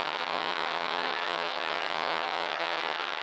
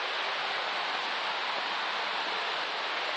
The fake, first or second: first